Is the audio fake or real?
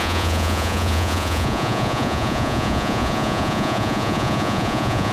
fake